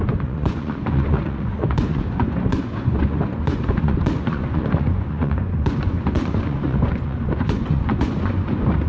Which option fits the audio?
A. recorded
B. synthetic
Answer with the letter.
B